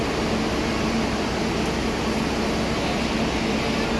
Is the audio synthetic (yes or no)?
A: no